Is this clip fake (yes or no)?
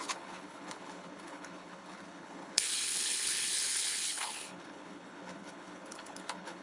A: yes